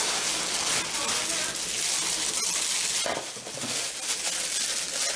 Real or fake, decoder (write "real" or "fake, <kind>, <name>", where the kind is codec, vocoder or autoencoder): real